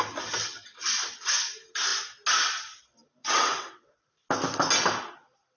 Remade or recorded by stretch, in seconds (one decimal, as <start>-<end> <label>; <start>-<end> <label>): 0.0-3.2 recorded; 3.2-3.9 remade; 3.9-5.6 recorded